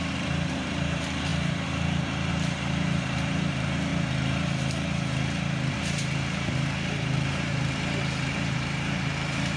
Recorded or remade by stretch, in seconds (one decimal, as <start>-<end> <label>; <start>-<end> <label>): 0.0-3.9 remade; 3.9-5.7 recorded; 5.7-9.6 remade